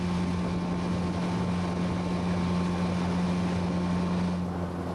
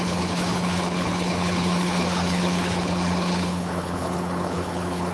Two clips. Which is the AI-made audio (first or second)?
second